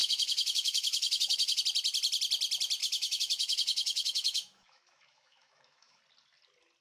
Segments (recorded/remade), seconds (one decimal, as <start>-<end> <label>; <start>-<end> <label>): 0.0-1.6 remade; 1.6-2.8 recorded; 2.8-6.0 remade; 6.0-6.8 recorded